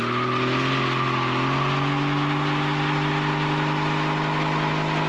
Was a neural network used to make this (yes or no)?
no